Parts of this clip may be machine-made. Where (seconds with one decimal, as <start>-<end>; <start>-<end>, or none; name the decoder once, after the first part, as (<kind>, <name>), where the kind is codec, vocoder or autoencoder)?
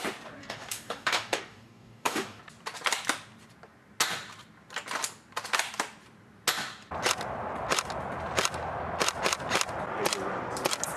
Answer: 0.4-2.4 (codec, DAC)